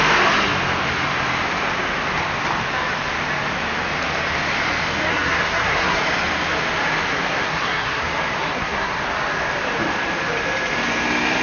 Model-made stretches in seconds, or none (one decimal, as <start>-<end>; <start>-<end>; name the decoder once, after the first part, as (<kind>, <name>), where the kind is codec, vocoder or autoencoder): 5.1-6.0 (codec, SNAC); 7.1-8.0; 8.4-9.0

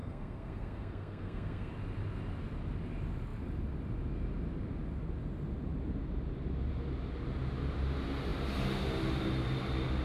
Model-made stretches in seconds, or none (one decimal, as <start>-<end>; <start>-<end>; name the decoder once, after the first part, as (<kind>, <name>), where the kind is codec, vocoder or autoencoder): 0.0-1.7 (codec, SNAC)

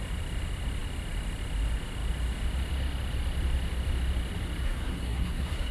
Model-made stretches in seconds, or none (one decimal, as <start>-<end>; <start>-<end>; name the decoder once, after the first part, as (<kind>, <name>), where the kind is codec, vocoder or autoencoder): 4.6-5.7 (codec, SNAC)